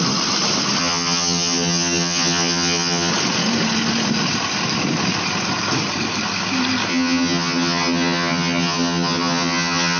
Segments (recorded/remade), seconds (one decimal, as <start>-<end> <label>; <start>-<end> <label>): 0.0-0.8 recorded; 0.8-3.1 remade; 3.1-6.9 recorded; 6.9-10.0 remade